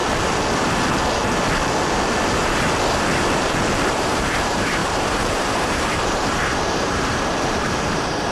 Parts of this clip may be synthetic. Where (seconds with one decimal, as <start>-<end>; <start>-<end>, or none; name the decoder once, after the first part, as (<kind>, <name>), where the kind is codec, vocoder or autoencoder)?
3.9-8.3 (vocoder, BigVGAN v2)